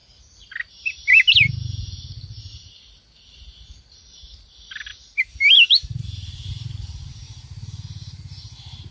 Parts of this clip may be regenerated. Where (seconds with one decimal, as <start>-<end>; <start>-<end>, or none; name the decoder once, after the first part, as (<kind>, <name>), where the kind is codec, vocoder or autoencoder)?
none